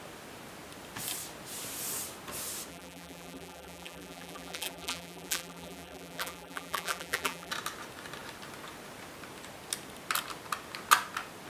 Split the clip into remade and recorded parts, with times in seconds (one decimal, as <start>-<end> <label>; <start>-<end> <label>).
0.0-2.7 recorded; 2.7-7.5 remade; 7.5-11.5 recorded